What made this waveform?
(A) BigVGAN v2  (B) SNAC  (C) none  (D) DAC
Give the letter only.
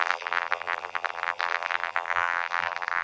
A